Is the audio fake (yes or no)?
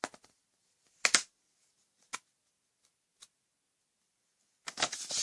no